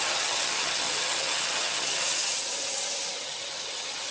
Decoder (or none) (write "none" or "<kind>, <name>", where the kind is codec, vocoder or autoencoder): vocoder, HiFi-GAN